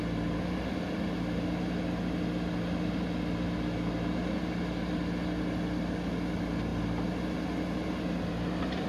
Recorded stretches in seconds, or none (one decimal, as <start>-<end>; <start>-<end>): 0.0-8.9